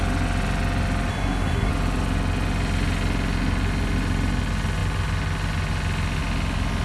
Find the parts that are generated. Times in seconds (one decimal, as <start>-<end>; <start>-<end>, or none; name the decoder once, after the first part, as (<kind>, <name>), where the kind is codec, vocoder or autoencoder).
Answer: 1.1-1.7 (codec, SNAC)